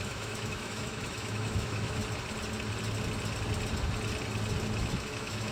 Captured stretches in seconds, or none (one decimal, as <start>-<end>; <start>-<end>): 2.0-4.8